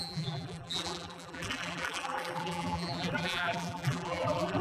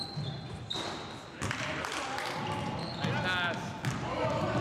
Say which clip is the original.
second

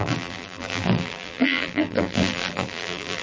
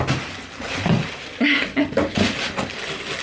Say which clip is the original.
second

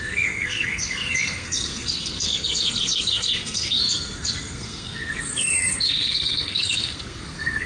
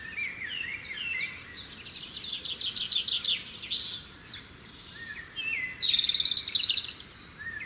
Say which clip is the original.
second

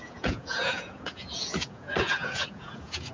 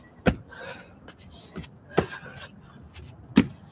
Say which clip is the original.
second